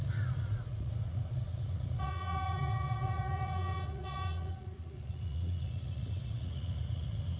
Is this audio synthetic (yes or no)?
yes